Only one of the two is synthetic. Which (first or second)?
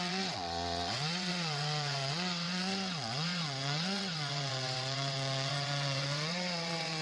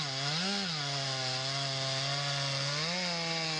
first